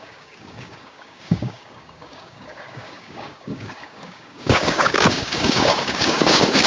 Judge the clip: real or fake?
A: fake